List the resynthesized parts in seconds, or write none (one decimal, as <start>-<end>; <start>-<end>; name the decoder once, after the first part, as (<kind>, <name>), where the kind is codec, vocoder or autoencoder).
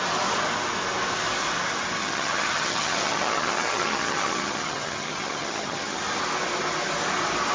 2.0-6.0 (vocoder, HiFi-GAN)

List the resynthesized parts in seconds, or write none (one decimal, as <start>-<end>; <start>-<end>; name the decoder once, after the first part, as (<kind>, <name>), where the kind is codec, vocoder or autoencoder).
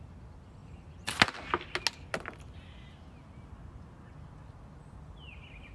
none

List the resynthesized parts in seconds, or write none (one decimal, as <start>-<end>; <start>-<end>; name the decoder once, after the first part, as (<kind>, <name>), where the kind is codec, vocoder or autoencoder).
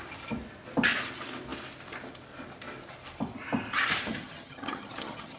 4.1-5.4 (vocoder, HiFi-GAN)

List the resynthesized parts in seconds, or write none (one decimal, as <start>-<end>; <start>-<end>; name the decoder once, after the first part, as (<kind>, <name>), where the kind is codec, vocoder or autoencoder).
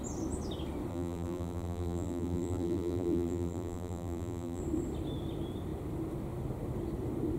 0.9-4.6 (vocoder, BigVGAN v2)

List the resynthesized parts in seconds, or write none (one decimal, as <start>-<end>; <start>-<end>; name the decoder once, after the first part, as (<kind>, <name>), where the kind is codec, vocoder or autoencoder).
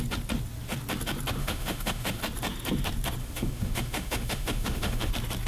1.4-2.2 (autoencoder, DAC-VAE); 3.2-5.1